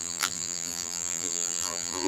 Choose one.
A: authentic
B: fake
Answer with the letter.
B